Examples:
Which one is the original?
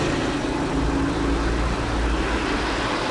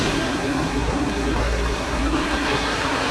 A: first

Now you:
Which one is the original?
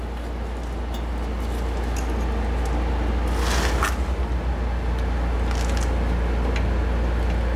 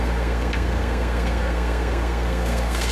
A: first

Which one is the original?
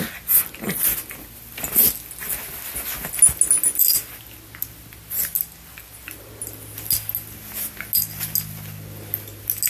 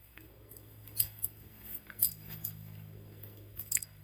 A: first